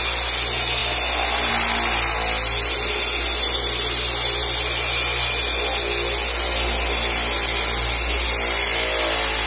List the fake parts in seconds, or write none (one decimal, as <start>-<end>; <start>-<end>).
none